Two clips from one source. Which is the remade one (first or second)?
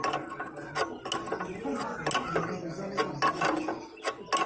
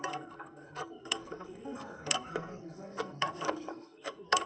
second